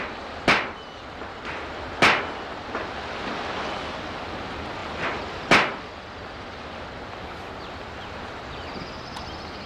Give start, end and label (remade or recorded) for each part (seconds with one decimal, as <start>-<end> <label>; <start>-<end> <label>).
0.0-9.7 recorded